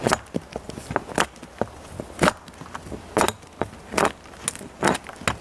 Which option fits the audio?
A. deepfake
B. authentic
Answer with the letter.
B